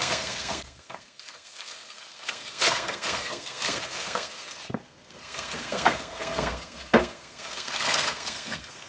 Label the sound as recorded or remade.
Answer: remade